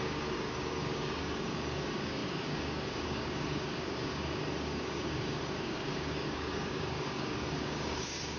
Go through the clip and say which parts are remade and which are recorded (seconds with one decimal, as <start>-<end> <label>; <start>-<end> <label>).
0.0-8.4 remade